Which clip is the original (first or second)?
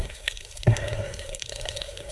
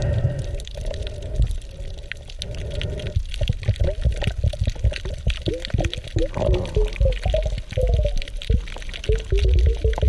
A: second